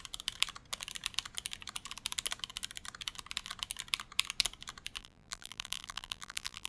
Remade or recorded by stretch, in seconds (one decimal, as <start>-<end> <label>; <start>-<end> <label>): 0.0-5.0 recorded; 5.0-6.7 remade